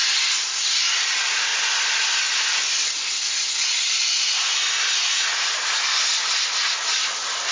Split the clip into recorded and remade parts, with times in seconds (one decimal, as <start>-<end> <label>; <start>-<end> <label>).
0.0-7.5 recorded